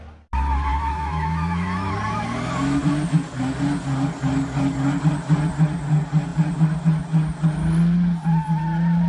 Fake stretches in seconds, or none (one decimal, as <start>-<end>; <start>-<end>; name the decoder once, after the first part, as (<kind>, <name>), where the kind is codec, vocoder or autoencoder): 0.7-1.9 (autoencoder, DAC-VAE)